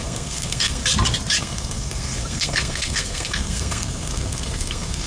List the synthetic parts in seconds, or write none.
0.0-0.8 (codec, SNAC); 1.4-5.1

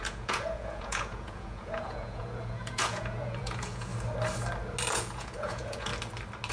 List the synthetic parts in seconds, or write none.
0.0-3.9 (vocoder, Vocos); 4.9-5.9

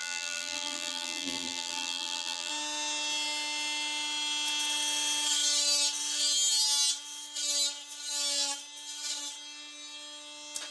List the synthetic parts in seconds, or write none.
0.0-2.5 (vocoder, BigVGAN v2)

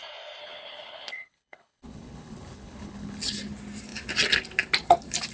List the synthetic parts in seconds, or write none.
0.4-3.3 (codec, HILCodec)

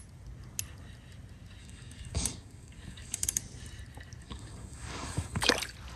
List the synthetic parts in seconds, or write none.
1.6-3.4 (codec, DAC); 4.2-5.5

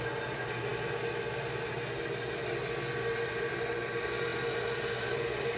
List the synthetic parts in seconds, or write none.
none